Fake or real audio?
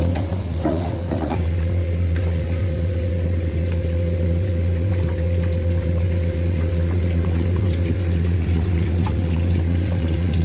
fake